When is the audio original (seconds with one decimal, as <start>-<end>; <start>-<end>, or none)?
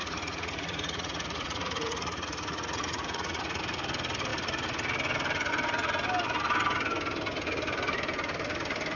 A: 3.6-9.0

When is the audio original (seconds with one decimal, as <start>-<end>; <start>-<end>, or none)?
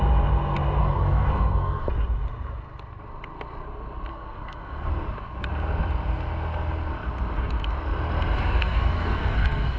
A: 0.0-0.8; 1.9-4.1; 4.9-8.6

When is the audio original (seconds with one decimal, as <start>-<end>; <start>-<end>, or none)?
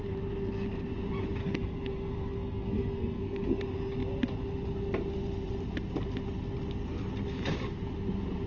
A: 0.0-1.4; 3.6-8.5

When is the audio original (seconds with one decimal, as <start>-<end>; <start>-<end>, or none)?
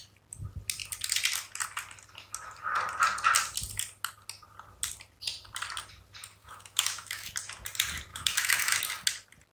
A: 0.0-6.4; 7.3-8.1; 8.8-9.5